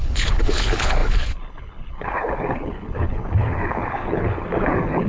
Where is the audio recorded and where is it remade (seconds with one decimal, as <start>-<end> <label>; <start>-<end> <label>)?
0.0-5.1 remade